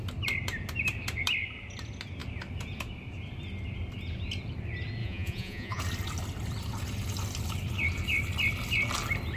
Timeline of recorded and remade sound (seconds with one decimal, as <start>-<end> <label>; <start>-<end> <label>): 0.0-5.0 recorded; 5.0-5.8 remade; 5.8-9.4 recorded